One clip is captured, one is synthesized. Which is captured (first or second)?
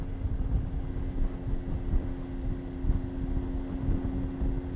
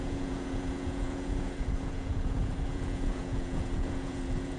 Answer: first